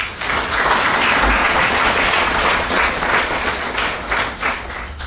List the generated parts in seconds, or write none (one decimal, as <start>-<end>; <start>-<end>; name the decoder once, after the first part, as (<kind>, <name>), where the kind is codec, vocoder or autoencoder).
1.4-3.7 (vocoder, Vocos)